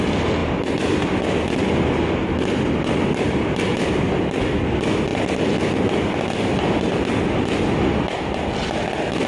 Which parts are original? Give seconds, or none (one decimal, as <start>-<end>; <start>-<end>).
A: 0.0-9.3